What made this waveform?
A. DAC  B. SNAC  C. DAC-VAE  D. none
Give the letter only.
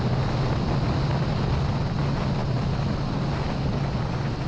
D